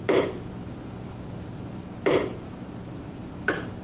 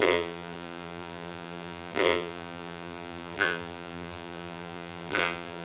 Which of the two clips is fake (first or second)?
second